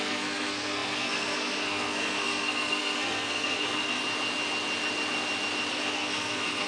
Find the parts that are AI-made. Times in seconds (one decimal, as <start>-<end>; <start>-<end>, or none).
0.0-4.0; 5.7-6.7

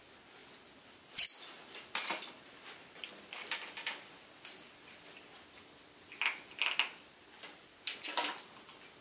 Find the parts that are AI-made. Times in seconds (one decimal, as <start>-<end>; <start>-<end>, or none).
none

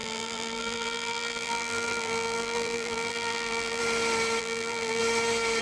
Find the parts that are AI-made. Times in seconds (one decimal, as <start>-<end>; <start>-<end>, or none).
0.0-3.8; 4.4-5.0

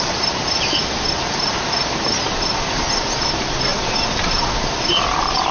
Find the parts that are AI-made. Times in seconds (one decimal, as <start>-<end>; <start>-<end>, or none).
none

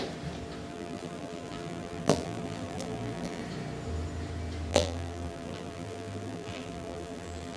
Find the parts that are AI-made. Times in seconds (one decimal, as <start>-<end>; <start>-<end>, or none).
0.7-3.4; 4.7-7.6

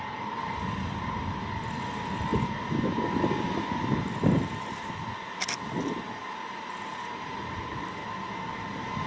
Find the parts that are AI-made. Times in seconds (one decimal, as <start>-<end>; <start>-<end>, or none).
none

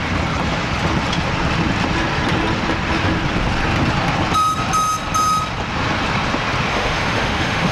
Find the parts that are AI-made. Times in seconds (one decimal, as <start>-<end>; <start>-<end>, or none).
6.7-7.7